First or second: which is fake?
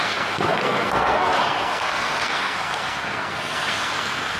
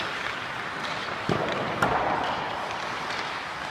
first